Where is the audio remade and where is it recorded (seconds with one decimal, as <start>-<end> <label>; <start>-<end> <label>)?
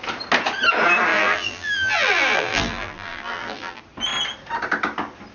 0.0-1.1 recorded; 1.1-3.8 remade; 3.8-5.3 recorded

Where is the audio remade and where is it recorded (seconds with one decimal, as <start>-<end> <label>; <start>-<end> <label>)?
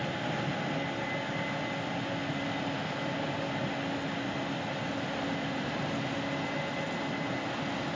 0.0-8.0 recorded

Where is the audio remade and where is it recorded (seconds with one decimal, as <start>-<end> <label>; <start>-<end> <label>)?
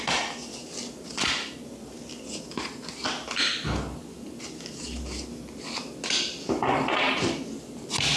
0.0-8.2 recorded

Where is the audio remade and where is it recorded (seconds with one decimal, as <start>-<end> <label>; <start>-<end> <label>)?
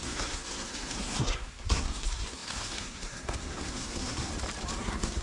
0.0-4.3 remade; 4.3-4.8 recorded; 4.8-5.2 remade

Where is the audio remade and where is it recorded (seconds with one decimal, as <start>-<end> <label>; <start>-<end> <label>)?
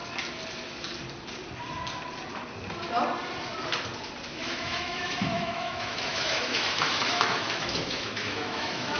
0.0-4.3 recorded; 4.3-9.0 remade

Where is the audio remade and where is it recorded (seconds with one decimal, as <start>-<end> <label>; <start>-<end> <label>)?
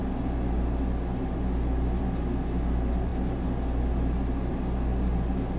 0.0-5.6 recorded